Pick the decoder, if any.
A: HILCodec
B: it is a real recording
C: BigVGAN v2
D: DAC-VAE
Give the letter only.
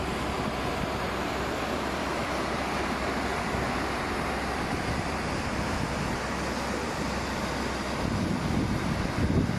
C